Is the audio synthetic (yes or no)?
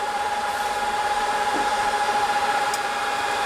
yes